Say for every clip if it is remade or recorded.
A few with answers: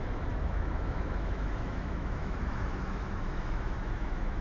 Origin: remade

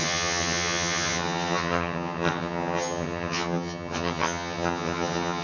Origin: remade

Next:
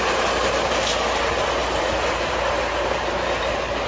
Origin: recorded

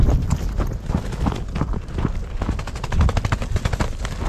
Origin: recorded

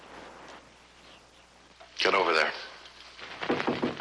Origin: recorded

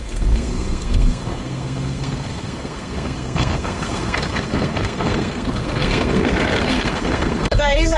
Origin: remade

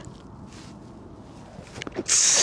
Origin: recorded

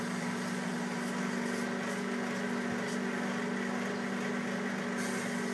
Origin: recorded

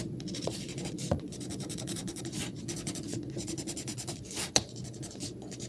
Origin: remade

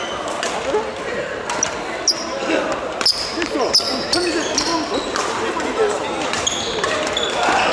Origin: recorded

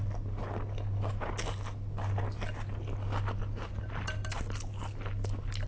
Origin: recorded